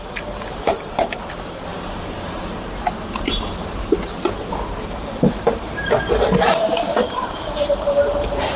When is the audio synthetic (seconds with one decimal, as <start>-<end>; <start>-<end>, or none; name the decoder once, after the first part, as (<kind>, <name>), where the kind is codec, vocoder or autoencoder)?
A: 0.0-1.7 (vocoder, BigVGAN v2); 5.2-8.6

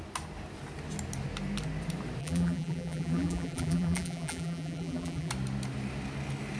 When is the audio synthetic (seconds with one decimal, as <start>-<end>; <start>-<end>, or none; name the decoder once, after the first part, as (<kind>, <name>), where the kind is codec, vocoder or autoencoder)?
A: 2.2-5.3 (vocoder, BigVGAN v2)

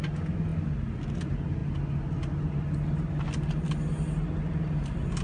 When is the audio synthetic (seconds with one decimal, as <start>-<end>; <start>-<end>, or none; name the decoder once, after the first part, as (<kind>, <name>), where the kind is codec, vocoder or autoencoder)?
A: none

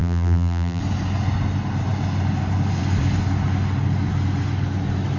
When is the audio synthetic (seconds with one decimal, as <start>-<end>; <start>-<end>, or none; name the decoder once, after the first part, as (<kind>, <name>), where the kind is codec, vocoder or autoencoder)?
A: 0.0-0.8 (vocoder, BigVGAN v2)

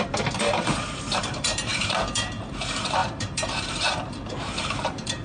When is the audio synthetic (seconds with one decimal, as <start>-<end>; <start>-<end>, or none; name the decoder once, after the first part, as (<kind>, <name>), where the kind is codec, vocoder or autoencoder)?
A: 0.0-5.2 (vocoder, BigVGAN v2)

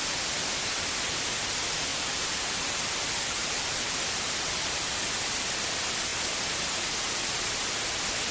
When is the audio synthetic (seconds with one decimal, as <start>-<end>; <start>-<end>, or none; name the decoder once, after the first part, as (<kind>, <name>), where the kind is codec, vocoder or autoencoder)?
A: 1.9-4.7 (vocoder, BigVGAN v2)

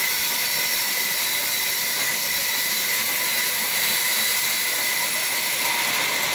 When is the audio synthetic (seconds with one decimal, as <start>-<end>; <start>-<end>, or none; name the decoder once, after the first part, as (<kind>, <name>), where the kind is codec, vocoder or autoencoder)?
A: 0.0-2.9 (vocoder, BigVGAN v2); 4.3-5.0